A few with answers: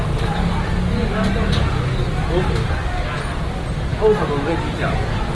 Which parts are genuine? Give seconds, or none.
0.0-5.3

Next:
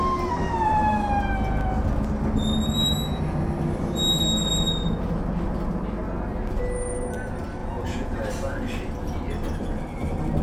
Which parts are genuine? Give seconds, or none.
0.0-7.6; 8.2-10.4